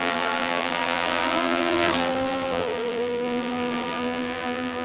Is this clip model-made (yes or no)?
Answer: yes